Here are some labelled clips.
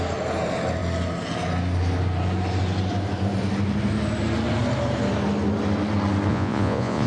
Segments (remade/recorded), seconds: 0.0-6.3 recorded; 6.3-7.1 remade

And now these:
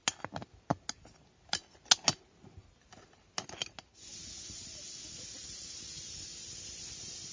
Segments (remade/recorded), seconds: 0.0-7.3 recorded

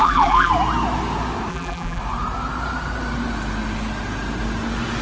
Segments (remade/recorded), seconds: 0.0-0.5 remade; 0.5-1.5 recorded; 1.5-2.0 remade; 2.0-5.0 recorded

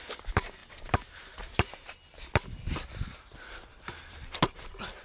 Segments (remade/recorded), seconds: 0.0-5.0 recorded

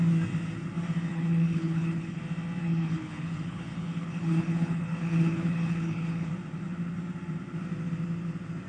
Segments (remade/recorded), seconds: 0.0-1.1 recorded; 1.1-2.2 remade; 2.2-2.6 recorded; 2.6-6.3 remade; 6.3-8.7 recorded

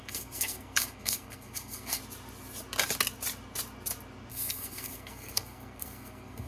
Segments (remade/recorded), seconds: 0.0-2.0 remade; 2.0-4.3 recorded; 4.3-6.5 remade

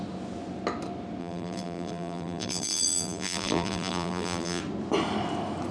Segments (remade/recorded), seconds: 0.0-1.2 recorded; 1.2-4.6 remade; 4.6-5.7 recorded